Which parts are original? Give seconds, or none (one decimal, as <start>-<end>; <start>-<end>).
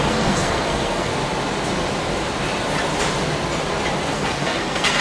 1.1-4.1